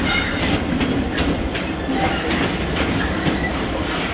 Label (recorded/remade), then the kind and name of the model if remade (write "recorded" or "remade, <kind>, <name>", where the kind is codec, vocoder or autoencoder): remade, vocoder, BigVGAN v2